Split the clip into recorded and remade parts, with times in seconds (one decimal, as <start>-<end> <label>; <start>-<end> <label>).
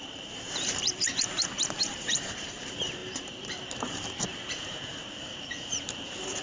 0.0-1.1 remade; 1.1-1.9 recorded; 1.9-6.4 remade